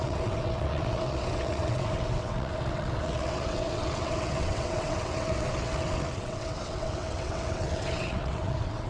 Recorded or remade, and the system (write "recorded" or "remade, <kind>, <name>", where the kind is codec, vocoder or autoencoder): remade, vocoder, WaveNeXt